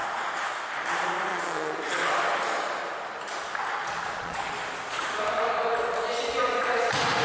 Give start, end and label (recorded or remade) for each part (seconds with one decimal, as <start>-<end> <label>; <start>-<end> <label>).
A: 0.0-1.3 recorded; 1.3-1.8 remade; 1.8-3.8 recorded; 3.8-4.5 remade; 4.5-7.2 recorded